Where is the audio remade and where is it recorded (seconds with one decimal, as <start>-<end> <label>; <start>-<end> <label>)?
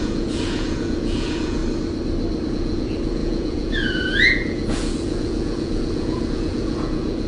0.0-1.6 remade; 1.6-2.5 recorded; 2.5-7.3 remade